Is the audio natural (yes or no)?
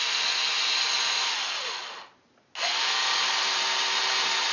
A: yes